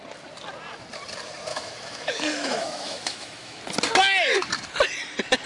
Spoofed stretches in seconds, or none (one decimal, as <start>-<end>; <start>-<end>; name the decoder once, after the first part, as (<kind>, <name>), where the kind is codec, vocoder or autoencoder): 1.5-3.6 (autoencoder, DAC-VAE)